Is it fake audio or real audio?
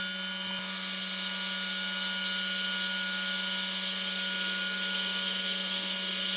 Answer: real